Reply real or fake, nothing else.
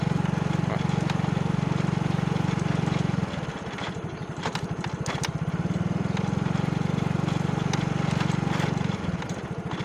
real